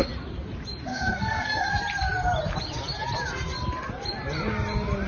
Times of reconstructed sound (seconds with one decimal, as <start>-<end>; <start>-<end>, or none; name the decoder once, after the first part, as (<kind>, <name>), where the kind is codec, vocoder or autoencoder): 0.9-1.8 (codec, SNAC)